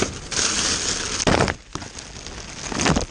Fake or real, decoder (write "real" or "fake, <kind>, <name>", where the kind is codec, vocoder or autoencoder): real